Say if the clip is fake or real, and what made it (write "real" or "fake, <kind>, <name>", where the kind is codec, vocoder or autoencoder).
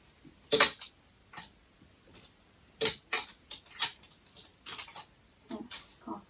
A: real